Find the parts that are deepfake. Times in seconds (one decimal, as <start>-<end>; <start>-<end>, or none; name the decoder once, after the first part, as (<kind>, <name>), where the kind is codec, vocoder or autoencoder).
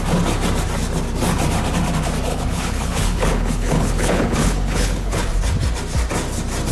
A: 2.3-5.2 (codec, HILCodec)